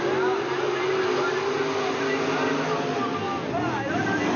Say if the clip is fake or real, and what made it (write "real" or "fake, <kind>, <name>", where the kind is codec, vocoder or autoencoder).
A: real